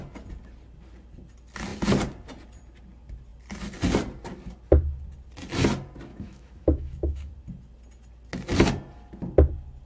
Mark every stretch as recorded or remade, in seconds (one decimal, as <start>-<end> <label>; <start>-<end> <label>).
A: 0.0-6.1 recorded; 6.1-7.3 remade; 7.3-9.8 recorded